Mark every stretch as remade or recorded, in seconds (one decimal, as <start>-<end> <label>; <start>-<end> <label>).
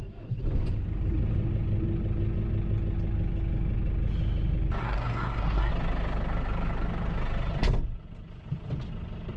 0.0-4.8 recorded; 4.8-5.7 remade; 5.7-9.4 recorded